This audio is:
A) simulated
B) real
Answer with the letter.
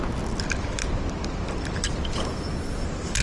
B